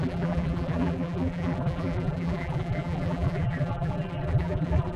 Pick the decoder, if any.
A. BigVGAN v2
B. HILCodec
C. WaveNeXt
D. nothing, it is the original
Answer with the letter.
A